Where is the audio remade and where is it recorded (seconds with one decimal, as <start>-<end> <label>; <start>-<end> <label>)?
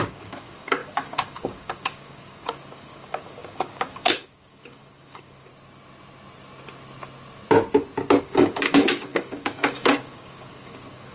0.0-5.5 remade; 5.5-8.2 recorded; 8.2-11.1 remade